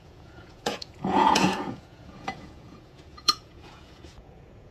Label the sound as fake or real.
fake